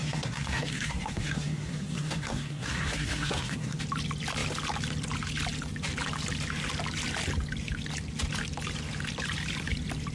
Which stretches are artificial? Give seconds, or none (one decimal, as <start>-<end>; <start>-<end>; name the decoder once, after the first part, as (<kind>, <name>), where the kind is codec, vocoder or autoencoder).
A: 0.0-3.8 (codec, SNAC)